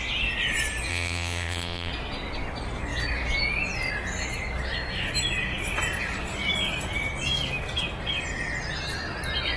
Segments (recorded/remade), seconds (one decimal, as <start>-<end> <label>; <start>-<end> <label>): 0.0-0.9 recorded; 0.9-1.9 remade; 1.9-9.6 recorded